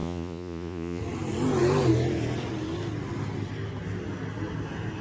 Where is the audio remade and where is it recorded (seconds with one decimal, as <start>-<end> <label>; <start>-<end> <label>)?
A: 0.0-1.0 remade; 1.0-5.0 recorded